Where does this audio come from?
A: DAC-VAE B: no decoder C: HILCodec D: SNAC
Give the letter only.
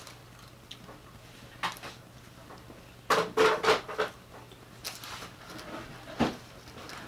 B